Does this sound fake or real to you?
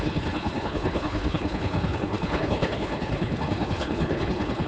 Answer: fake